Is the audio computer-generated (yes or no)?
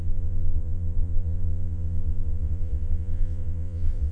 yes